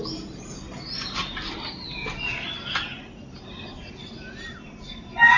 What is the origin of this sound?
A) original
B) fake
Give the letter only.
A